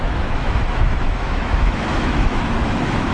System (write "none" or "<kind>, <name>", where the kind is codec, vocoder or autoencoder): autoencoder, DAC-VAE